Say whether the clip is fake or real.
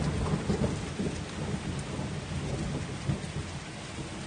real